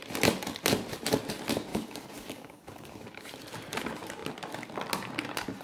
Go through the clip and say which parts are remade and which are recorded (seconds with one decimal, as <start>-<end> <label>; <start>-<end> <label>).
0.0-1.7 recorded; 1.7-3.2 remade; 3.2-5.6 recorded